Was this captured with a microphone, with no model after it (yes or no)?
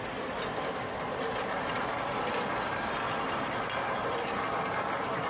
yes